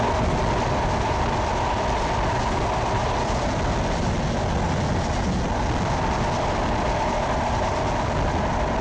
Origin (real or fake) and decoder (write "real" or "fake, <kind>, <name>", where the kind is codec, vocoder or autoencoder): real